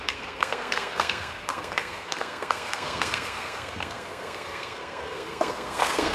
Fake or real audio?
fake